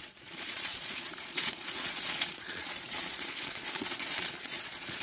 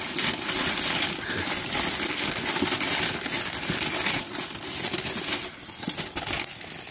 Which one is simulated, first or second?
first